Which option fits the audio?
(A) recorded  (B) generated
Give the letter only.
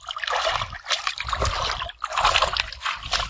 A